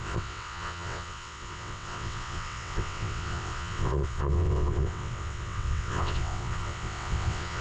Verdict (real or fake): fake